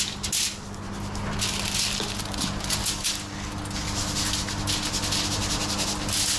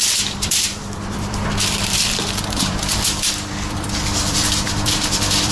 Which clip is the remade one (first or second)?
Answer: second